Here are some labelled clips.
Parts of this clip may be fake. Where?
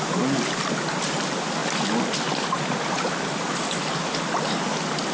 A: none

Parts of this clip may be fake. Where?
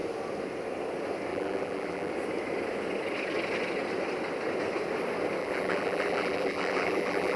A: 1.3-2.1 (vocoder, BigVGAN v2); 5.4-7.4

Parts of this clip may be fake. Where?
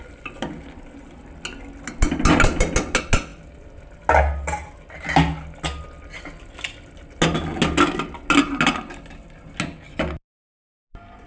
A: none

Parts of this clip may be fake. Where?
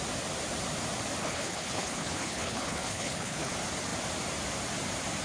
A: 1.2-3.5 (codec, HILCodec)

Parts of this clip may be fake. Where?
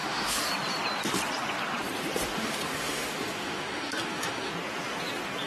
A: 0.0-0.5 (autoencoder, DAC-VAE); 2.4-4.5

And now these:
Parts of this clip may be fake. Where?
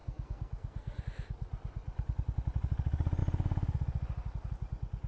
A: 0.0-1.0 (codec, SNAC)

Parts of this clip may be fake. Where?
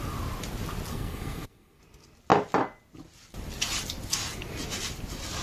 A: 0.9-1.8 (codec, SNAC)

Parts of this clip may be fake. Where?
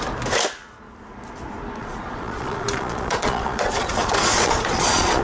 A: 1.8-5.2 (vocoder, Vocos)